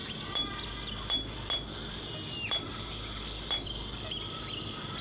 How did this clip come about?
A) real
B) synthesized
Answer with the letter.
A